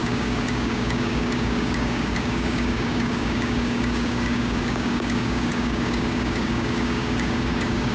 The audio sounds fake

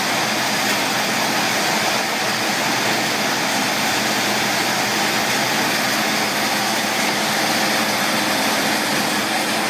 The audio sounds real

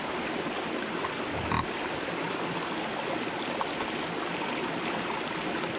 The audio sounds real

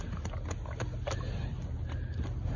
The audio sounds real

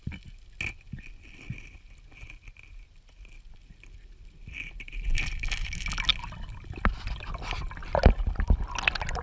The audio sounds real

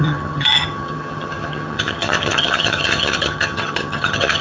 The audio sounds fake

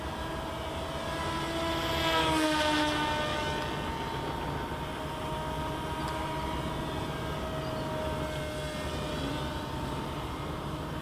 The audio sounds real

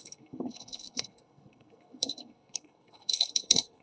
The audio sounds fake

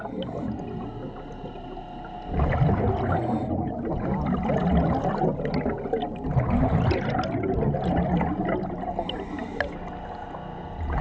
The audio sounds real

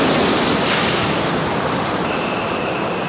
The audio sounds real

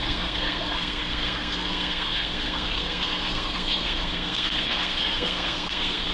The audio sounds fake